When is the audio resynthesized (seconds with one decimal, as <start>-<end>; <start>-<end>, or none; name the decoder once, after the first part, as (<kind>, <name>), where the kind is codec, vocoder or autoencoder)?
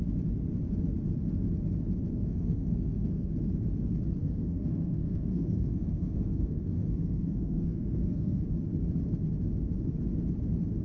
2.1-3.3 (codec, SNAC); 4.2-8.4